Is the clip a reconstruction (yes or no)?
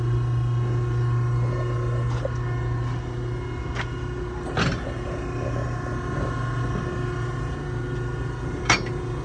no